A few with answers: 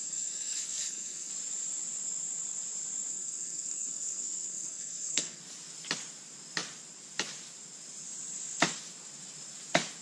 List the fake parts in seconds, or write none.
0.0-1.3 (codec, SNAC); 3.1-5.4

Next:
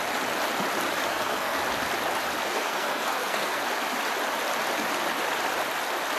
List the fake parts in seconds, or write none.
1.1-1.6 (codec, SNAC); 2.4-3.6